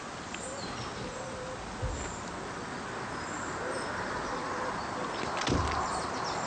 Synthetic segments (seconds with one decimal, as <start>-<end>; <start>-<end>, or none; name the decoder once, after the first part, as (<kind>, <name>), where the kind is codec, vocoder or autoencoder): none